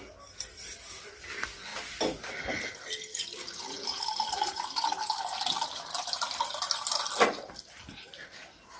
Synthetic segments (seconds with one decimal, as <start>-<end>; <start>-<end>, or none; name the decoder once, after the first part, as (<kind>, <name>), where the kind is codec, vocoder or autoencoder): none